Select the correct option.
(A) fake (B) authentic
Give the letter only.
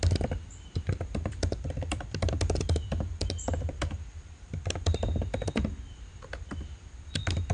A